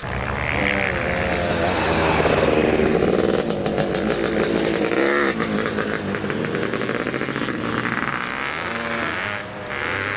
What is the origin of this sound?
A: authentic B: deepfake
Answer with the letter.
A